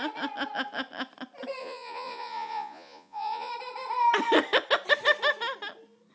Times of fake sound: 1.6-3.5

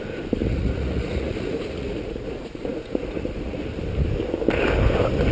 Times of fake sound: 0.4-3.6